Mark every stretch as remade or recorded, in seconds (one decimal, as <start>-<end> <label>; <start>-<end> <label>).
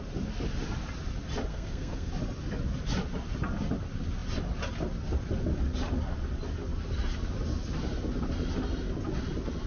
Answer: 0.0-1.5 recorded; 1.5-2.1 remade; 2.1-9.7 recorded